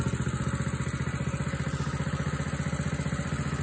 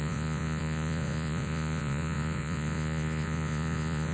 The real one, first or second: first